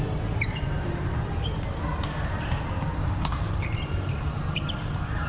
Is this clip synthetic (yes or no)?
yes